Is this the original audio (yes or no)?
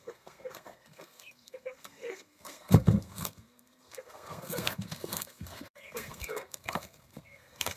no